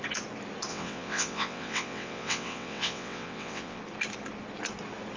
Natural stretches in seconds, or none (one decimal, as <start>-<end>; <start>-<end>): 0.0-0.7; 3.8-5.2